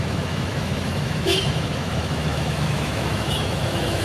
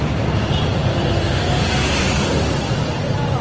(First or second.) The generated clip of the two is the first